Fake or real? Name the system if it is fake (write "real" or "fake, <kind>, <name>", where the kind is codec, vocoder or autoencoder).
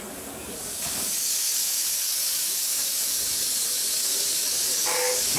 fake, codec, DAC